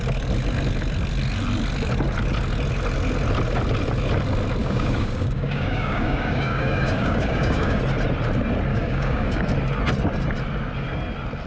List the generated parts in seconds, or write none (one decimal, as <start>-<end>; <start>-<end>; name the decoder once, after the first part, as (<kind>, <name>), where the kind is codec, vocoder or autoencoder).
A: 4.6-7.8 (codec, DAC); 8.7-9.5